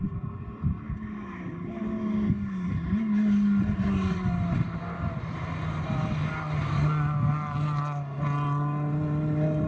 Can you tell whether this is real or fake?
real